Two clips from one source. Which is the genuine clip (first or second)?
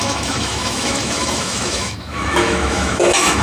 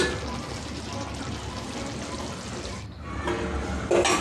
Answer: second